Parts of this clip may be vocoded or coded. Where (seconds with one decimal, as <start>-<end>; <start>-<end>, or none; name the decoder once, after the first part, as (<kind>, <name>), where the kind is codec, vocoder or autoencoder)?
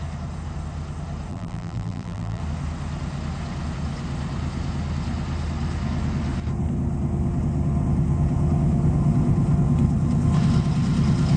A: 1.3-2.4 (vocoder, BigVGAN v2)